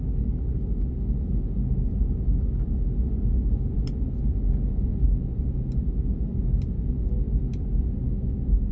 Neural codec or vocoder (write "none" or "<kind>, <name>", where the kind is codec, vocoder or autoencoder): none